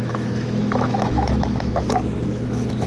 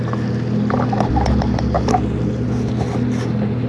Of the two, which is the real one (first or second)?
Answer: second